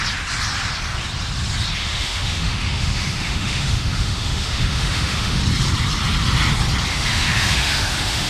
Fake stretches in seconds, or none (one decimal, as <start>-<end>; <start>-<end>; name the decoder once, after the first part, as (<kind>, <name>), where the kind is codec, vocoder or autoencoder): 1.8-5.4 (autoencoder, DAC-VAE); 6.9-8.3